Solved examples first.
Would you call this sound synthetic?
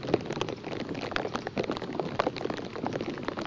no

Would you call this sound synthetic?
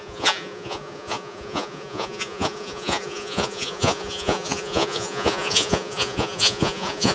yes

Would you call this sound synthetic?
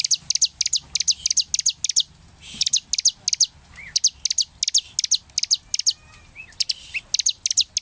no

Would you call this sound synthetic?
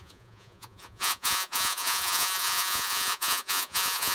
yes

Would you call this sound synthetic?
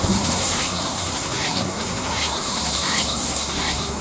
yes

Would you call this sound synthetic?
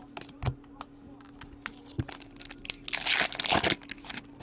no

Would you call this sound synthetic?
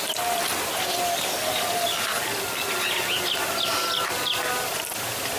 no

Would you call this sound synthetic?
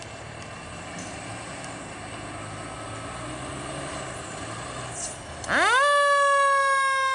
no